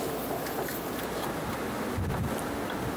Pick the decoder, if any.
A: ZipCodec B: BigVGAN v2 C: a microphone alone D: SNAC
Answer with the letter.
C